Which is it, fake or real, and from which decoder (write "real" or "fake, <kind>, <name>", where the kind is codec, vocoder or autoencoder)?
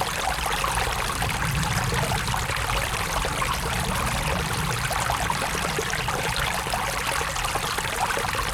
fake, vocoder, BigVGAN v2